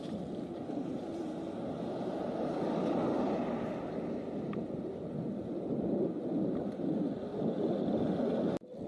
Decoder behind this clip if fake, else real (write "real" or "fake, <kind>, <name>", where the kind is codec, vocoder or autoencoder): real